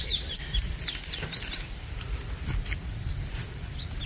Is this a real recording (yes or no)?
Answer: yes